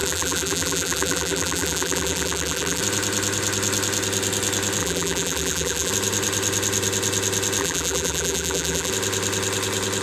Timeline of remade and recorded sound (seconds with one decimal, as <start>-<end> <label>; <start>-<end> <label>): 0.0-2.8 remade; 2.8-4.8 recorded; 4.8-5.9 remade; 5.9-7.6 recorded; 7.6-8.9 remade; 8.9-10.0 recorded